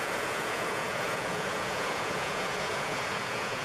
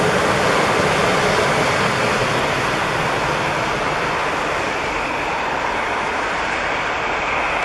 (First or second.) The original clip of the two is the second